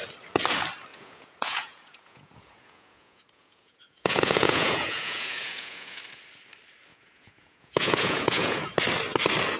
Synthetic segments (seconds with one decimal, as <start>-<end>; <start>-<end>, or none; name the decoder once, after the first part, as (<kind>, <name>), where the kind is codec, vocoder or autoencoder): 0.9-6.0 (vocoder, Vocos); 6.9-8.8